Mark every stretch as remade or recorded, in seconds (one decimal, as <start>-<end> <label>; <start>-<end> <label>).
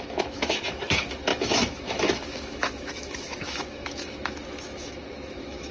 0.0-5.7 remade